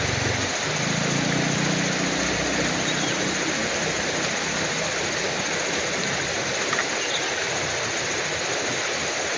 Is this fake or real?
real